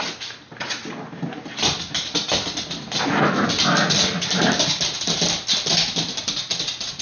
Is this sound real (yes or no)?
yes